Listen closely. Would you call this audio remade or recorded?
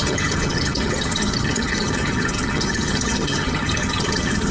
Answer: remade